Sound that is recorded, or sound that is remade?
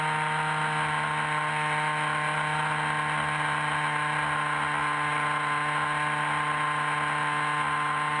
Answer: recorded